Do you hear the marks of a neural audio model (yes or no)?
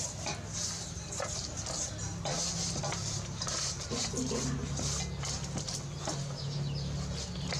no